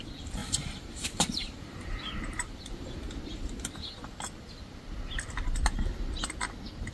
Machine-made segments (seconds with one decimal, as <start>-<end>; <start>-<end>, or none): 0.4-3.9